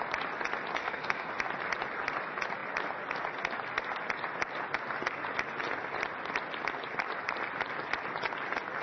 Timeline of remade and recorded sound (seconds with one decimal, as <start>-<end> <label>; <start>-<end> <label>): 0.0-0.8 recorded; 0.8-1.3 remade; 1.3-8.8 recorded